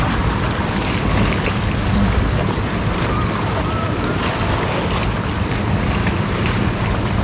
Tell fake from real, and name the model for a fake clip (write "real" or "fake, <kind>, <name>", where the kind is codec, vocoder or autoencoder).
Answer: real